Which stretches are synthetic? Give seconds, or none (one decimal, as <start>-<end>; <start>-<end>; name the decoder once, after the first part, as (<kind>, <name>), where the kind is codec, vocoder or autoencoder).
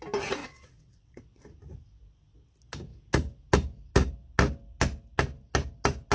0.4-1.2 (vocoder, WaveNeXt)